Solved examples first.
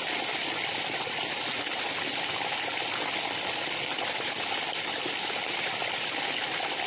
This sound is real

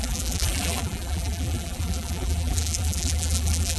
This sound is fake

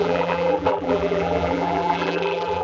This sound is fake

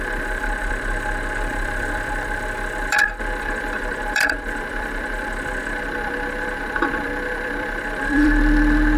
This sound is fake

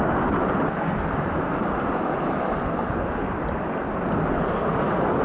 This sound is real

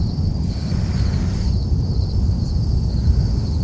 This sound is real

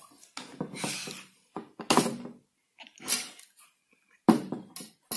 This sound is real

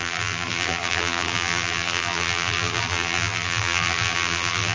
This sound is fake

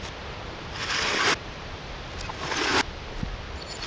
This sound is real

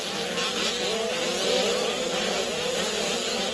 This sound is real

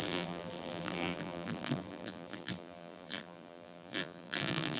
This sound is fake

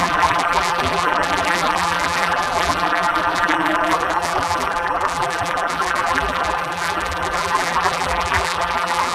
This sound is fake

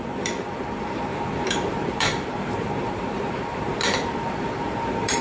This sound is fake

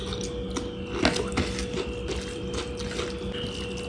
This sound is real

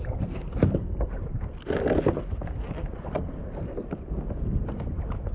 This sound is real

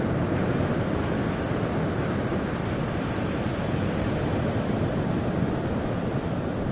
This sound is real